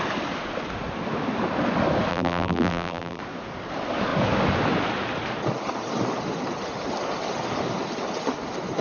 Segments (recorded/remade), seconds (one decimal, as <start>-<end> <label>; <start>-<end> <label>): 0.0-2.1 recorded; 2.1-3.2 remade; 3.2-8.8 recorded